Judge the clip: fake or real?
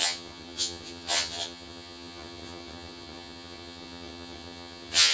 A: fake